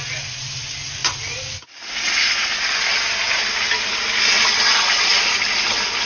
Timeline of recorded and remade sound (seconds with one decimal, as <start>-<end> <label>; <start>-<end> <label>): 0.0-6.1 recorded